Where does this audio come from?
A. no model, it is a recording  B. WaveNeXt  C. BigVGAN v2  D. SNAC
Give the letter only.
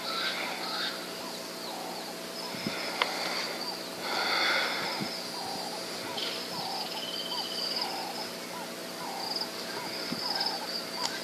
A